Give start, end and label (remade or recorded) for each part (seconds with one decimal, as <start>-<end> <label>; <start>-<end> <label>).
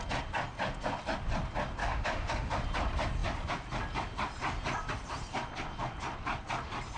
0.0-1.8 recorded; 1.8-2.5 remade; 2.5-7.0 recorded